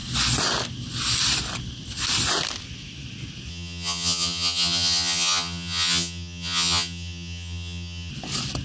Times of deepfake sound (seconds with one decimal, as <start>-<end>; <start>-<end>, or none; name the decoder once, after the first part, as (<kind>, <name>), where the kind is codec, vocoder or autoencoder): 3.5-8.1 (vocoder, HiFi-GAN)